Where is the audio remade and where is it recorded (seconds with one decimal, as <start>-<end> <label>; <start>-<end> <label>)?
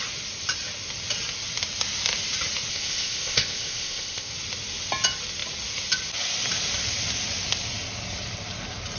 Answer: 0.0-2.7 recorded; 2.7-4.3 remade; 4.3-9.0 recorded